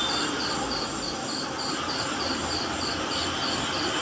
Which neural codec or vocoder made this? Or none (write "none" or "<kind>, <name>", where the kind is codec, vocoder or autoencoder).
none